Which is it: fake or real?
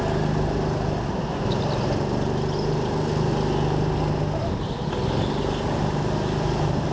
real